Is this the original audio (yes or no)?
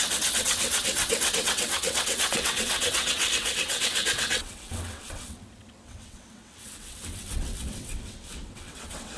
no